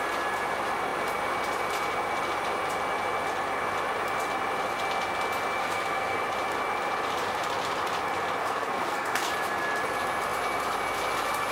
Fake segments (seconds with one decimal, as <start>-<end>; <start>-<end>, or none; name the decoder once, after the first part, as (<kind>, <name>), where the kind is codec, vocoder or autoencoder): 5.6-6.2 (codec, SNAC); 8.4-9.3